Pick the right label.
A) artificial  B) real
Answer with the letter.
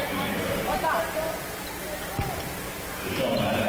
A